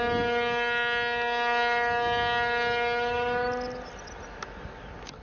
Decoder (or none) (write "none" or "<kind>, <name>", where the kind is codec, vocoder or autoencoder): none